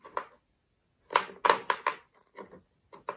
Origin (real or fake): real